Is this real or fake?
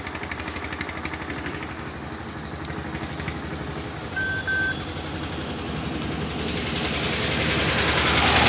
real